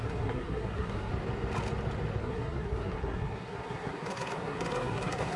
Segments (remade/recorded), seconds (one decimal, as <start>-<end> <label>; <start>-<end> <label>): 0.0-1.1 remade; 1.1-2.2 recorded; 2.2-5.4 remade